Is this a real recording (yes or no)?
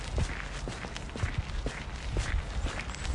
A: yes